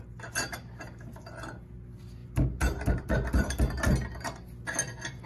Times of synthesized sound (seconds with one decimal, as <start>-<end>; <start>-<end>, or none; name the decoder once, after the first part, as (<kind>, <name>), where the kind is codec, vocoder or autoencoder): none